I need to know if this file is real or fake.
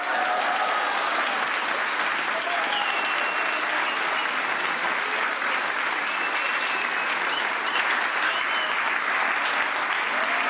real